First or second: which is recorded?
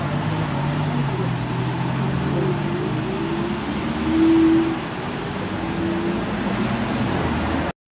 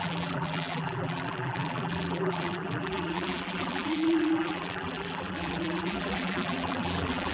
first